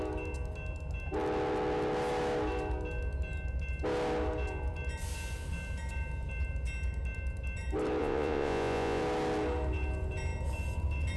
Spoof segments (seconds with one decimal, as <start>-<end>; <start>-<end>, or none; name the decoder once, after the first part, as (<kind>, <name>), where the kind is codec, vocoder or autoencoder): 8.0-9.0 (vocoder, Vocos)

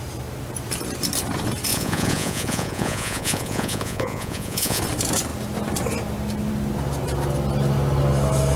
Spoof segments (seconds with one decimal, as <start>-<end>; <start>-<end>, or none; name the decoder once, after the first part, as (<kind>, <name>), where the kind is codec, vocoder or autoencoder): 1.7-4.8 (vocoder, Vocos)

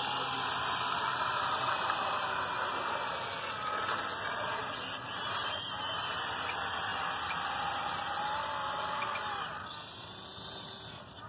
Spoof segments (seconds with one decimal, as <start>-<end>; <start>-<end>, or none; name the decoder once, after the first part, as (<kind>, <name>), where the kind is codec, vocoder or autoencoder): none

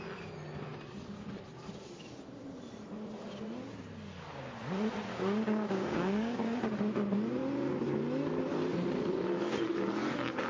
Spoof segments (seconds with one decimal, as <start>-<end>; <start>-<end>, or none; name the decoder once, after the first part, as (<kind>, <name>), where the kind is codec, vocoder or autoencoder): 5.1-6.6 (codec, DAC)

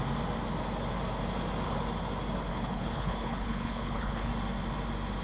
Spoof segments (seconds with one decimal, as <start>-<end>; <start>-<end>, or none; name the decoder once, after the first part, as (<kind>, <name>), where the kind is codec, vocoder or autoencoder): 2.5-4.3 (codec, HILCodec)